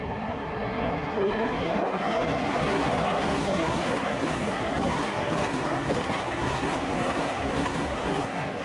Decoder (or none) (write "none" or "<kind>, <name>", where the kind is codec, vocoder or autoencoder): codec, SNAC